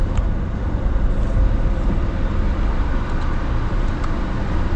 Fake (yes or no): yes